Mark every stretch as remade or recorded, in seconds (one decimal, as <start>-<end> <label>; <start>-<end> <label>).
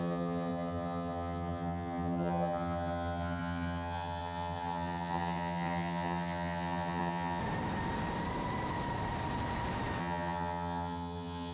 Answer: 0.0-7.4 remade; 7.4-10.0 recorded; 10.0-11.5 remade